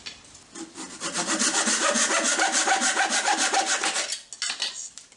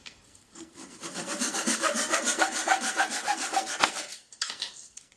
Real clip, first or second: first